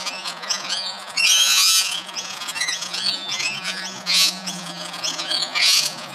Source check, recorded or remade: remade